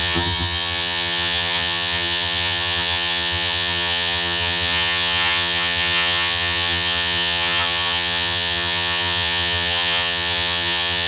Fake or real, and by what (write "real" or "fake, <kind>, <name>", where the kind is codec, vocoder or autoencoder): fake, vocoder, HiFi-GAN